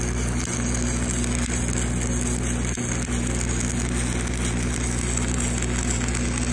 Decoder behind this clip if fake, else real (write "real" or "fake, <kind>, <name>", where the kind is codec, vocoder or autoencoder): real